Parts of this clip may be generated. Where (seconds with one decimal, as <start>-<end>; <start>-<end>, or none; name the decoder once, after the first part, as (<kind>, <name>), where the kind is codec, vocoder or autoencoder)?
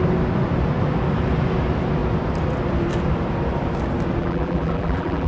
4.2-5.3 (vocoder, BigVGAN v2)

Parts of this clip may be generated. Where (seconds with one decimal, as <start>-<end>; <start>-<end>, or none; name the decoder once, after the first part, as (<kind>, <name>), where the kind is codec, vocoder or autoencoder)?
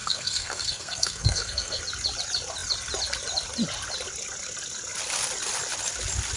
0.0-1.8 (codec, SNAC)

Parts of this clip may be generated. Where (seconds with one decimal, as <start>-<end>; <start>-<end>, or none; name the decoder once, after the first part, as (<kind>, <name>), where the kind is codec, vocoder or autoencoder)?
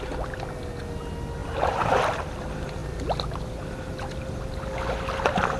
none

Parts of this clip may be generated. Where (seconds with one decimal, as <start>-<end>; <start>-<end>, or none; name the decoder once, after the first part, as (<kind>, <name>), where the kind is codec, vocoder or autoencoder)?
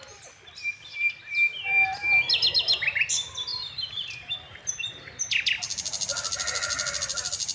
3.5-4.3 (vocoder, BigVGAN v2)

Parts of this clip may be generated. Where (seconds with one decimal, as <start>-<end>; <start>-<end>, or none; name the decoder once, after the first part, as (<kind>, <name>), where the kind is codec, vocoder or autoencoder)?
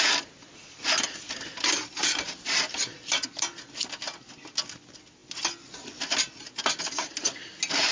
none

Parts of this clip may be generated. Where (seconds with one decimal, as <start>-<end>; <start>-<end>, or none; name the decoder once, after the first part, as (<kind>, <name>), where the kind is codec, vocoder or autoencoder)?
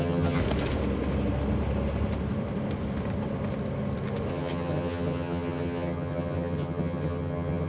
0.0-0.4 (vocoder, HiFi-GAN); 4.3-7.7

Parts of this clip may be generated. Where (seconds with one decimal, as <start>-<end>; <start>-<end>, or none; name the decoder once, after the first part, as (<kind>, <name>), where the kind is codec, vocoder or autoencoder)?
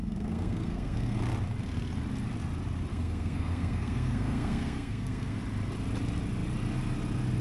0.0-1.2 (codec, SNAC); 2.9-5.4